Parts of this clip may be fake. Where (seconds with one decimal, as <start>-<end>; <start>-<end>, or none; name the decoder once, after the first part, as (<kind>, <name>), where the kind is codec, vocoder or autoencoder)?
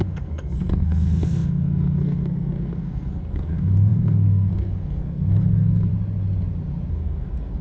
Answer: 0.0-5.9 (codec, SNAC); 6.9-7.6